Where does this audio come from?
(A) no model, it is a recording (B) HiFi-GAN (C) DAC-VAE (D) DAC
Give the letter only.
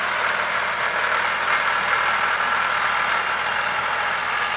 A